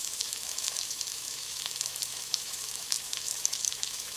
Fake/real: fake